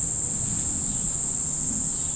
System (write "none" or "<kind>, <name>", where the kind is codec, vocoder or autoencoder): none